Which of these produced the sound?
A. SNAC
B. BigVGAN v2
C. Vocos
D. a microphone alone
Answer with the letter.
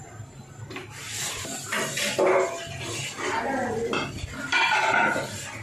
D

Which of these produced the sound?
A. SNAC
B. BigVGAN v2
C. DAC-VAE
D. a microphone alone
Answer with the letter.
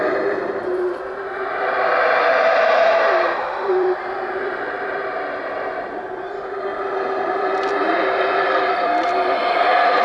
B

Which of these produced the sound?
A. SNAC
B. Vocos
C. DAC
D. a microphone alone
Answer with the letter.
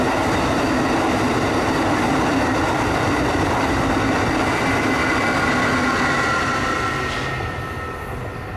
D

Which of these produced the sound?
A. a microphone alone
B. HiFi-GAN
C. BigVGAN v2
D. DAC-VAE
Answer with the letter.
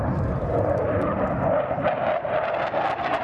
A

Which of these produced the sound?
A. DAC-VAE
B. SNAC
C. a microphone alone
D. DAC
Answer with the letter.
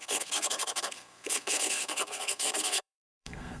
B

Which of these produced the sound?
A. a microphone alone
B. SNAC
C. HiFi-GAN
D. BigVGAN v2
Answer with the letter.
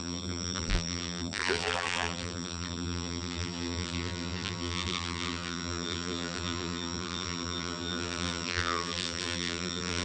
D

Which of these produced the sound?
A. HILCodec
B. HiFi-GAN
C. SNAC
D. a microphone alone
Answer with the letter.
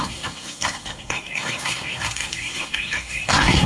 C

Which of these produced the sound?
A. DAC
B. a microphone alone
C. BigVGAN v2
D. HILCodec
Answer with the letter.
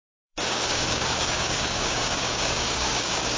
A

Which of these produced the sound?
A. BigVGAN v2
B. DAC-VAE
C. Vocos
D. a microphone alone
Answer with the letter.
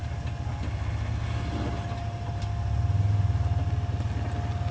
D